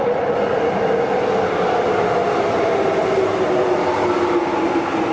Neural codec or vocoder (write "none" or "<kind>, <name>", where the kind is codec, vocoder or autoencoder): none